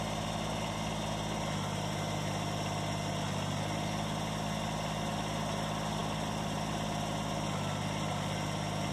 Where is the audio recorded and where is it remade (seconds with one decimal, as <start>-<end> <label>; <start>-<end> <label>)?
0.0-8.9 recorded